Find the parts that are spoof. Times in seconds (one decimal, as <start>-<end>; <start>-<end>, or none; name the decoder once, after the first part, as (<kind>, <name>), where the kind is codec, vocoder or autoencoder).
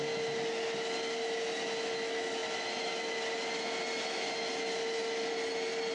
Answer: none